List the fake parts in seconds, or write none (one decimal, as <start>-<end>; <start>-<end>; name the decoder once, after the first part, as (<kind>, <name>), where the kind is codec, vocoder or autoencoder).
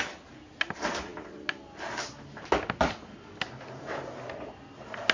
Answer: none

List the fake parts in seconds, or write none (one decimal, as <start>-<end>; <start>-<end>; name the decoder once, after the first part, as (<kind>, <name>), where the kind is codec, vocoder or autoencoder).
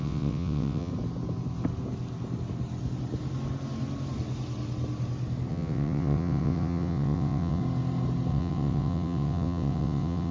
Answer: 0.0-0.9 (vocoder, WaveNeXt); 5.5-7.6; 8.3-10.3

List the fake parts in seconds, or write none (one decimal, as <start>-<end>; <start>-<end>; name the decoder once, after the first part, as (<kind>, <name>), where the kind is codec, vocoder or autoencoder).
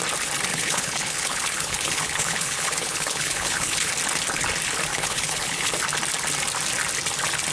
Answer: 0.5-3.9 (codec, HILCodec); 4.9-5.7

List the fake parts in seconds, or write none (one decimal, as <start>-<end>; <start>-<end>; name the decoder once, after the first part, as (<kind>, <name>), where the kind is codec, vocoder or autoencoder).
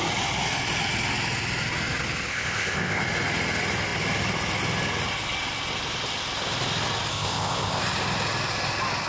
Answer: 2.3-3.0 (codec, ZipCodec); 7.1-7.8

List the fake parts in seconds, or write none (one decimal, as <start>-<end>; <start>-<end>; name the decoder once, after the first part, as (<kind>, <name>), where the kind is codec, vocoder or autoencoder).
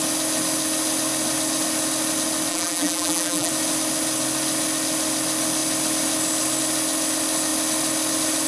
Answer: 2.5-3.5 (vocoder, BigVGAN v2)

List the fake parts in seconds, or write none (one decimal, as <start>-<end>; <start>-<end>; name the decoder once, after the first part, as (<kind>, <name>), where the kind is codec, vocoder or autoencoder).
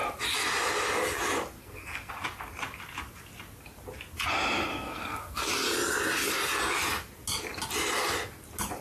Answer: 1.6-2.1 (codec, SNAC); 4.7-5.5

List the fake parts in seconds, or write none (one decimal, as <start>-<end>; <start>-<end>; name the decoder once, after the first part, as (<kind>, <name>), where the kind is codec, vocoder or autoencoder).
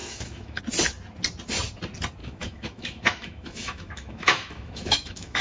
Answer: 0.0-0.6 (autoencoder, DAC-VAE); 2.2-5.4